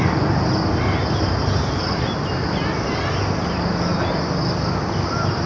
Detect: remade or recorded recorded